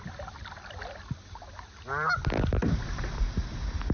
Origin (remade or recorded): recorded